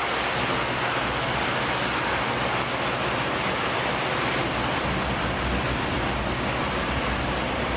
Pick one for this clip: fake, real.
real